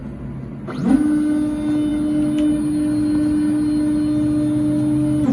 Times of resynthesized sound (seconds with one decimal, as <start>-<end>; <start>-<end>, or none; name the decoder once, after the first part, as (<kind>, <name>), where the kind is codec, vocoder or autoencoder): none